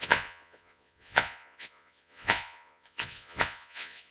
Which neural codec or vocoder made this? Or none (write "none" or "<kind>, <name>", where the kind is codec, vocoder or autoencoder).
vocoder, Vocos